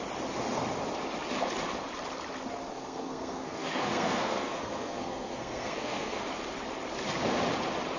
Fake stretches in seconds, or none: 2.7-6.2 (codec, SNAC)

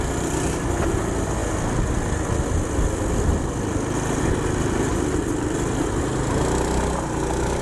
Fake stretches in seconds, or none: none